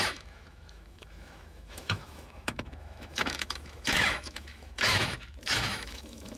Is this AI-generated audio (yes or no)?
yes